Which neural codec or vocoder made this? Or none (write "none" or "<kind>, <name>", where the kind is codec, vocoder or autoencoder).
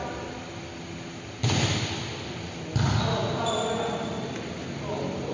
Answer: none